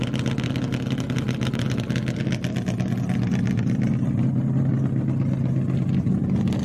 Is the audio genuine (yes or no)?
yes